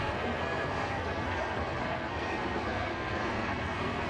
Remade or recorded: remade